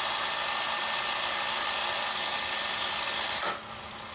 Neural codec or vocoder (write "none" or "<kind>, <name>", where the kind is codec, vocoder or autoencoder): none